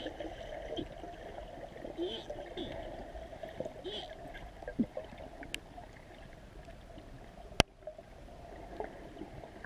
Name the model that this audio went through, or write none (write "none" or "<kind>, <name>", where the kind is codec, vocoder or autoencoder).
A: none